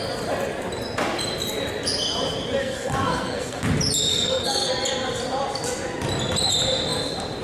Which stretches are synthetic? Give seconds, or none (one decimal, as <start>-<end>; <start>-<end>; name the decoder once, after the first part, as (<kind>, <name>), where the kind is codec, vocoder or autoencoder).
2.6-3.6 (codec, SNAC); 4.1-4.7